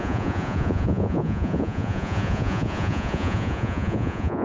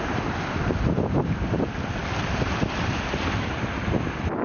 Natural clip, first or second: second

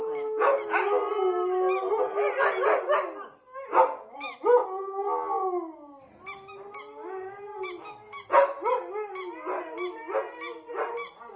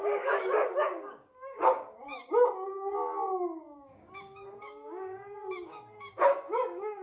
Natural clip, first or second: first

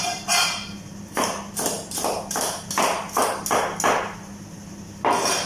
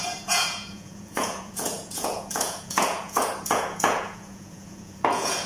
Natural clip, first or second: first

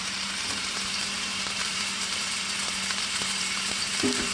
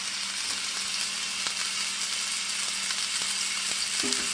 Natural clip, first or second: second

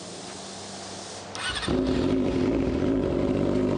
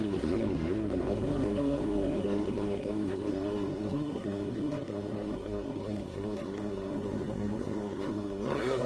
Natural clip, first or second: first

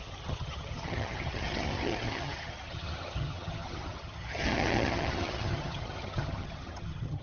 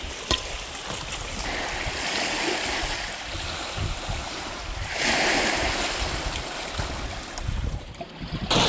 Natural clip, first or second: second